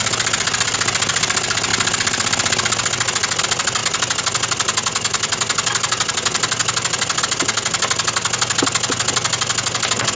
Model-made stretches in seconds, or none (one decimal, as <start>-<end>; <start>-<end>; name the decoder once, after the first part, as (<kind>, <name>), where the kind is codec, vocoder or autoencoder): none